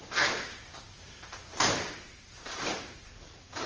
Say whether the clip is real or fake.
fake